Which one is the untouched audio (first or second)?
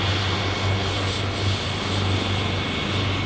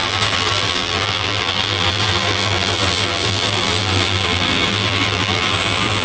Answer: first